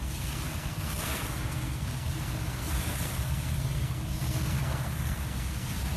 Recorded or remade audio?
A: remade